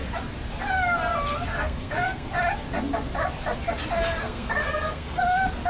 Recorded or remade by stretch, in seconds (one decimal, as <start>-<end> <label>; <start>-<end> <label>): 0.0-1.5 recorded; 1.5-2.3 remade; 2.3-4.2 recorded; 4.2-5.2 remade; 5.2-5.7 recorded